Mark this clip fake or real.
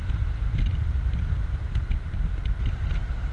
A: real